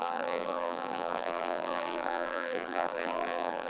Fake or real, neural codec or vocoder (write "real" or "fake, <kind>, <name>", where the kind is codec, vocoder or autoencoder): fake, vocoder, BigVGAN v2